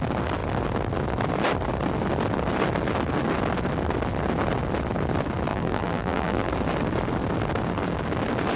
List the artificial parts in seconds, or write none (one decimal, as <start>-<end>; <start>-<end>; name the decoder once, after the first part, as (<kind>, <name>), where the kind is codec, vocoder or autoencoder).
5.5-6.5 (vocoder, BigVGAN v2)